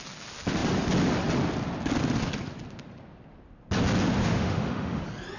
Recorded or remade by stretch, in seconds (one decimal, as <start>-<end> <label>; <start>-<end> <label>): 0.0-4.2 recorded; 4.2-5.0 remade; 5.0-5.4 recorded